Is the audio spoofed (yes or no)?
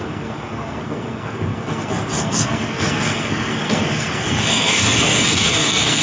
yes